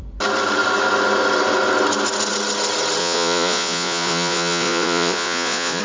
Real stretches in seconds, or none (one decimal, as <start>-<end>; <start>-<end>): 0.0-3.0